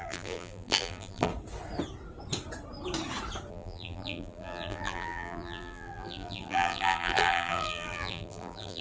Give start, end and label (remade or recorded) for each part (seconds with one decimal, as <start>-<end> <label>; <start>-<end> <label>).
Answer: 0.0-1.3 remade; 1.3-3.5 recorded; 3.5-8.8 remade